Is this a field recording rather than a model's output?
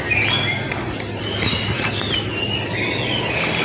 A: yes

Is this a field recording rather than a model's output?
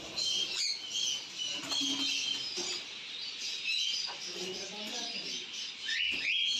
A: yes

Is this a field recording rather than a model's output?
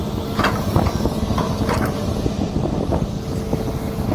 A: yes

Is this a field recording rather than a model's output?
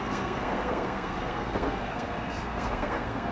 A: no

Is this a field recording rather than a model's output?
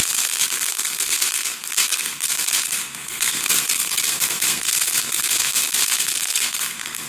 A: no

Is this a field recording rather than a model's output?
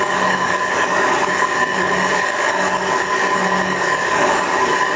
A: no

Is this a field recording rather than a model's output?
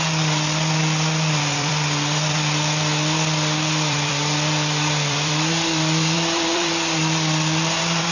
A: no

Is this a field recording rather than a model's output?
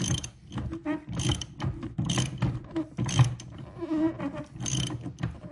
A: yes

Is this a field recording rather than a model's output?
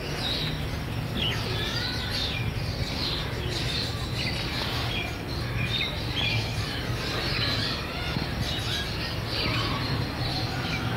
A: yes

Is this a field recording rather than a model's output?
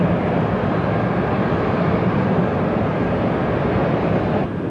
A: yes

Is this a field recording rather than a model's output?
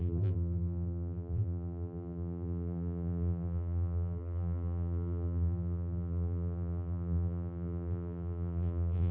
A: no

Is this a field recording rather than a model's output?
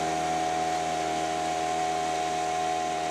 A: yes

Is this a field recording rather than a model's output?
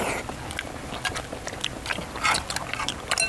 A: yes